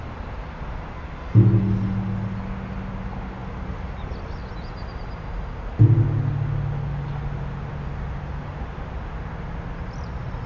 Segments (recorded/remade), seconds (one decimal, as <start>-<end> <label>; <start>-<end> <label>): 0.0-10.5 recorded